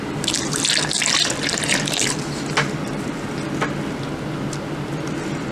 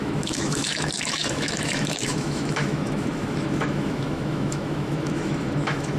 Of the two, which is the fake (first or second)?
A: second